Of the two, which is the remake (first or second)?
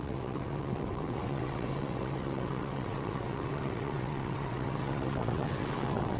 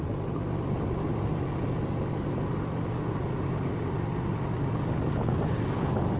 first